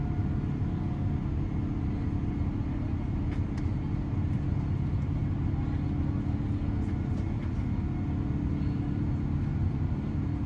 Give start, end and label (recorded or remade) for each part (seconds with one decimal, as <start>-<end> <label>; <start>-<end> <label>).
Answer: 0.0-3.7 recorded; 3.7-4.3 remade; 4.3-9.5 recorded; 9.5-10.5 remade